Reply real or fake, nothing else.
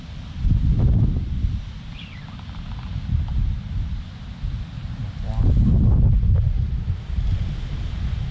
real